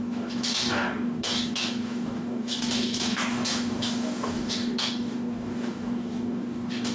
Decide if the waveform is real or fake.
fake